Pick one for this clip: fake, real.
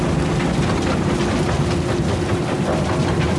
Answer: real